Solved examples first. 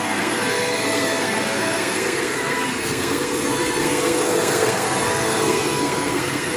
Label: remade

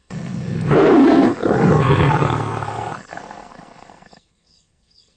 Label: remade